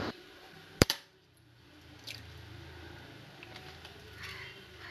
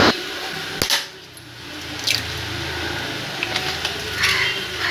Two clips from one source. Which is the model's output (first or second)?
first